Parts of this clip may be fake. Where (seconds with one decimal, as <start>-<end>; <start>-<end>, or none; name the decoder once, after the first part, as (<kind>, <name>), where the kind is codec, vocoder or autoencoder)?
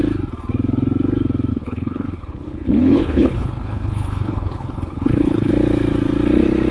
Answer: 1.5-5.5 (codec, HILCodec)